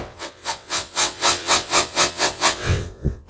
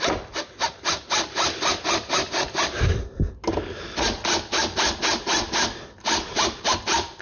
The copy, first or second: first